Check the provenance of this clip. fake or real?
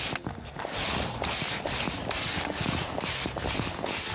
real